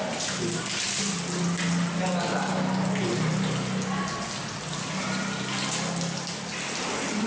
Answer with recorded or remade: recorded